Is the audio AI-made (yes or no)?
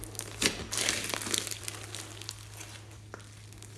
no